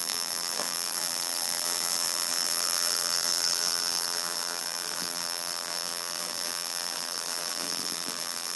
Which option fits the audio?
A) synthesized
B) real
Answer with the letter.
A